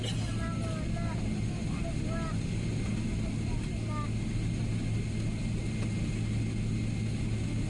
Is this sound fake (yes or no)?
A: no